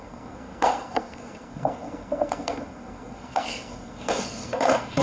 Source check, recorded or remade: remade